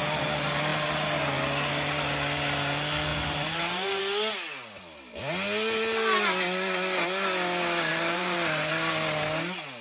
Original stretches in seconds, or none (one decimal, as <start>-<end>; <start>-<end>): 0.0-3.1; 4.0-7.9; 8.7-9.8